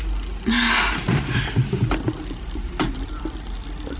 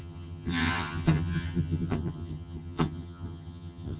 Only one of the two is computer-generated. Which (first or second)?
second